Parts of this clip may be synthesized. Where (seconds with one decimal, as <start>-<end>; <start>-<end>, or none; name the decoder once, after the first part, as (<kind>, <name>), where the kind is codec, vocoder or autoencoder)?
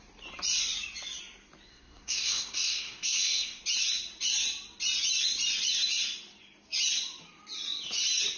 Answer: 1.7-3.6 (codec, SNAC)